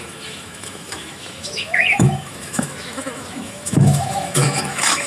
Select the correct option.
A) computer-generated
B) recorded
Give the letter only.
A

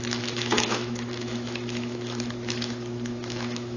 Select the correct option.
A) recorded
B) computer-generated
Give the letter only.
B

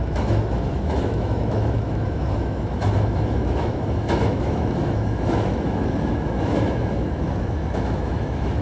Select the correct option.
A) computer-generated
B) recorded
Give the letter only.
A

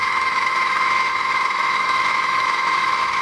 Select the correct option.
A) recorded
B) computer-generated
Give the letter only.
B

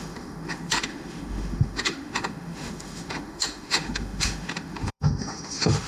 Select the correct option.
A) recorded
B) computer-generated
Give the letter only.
B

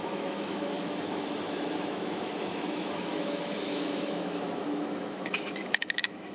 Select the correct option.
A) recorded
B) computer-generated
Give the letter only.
B